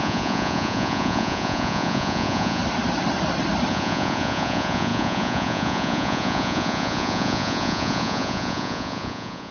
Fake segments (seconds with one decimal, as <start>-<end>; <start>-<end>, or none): 0.0-2.6; 3.7-9.5

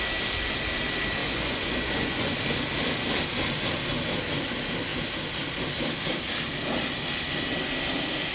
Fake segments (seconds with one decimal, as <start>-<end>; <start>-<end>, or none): 1.2-2.3

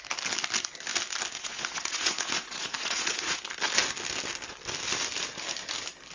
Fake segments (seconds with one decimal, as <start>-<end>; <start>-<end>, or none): 1.3-3.4